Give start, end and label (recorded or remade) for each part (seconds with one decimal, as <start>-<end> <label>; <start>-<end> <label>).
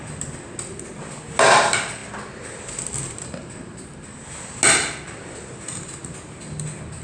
0.0-7.0 recorded